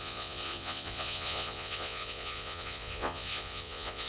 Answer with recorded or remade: remade